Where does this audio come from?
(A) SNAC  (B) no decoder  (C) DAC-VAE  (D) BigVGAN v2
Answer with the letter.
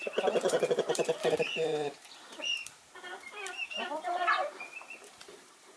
D